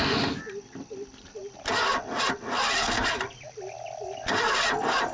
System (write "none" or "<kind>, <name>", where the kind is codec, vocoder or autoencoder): none